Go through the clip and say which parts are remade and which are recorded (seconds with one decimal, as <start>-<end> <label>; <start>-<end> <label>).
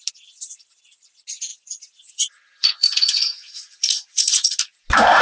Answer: 0.0-1.5 recorded; 1.5-4.6 remade; 4.6-5.2 recorded